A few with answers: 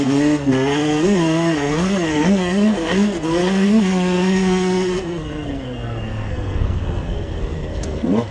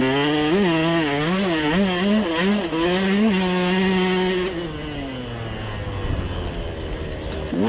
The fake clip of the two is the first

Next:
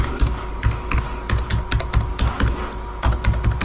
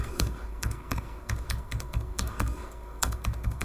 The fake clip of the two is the second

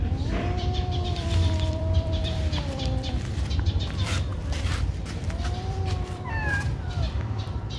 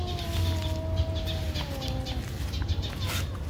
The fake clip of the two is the first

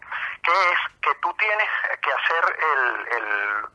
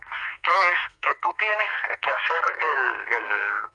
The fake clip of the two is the second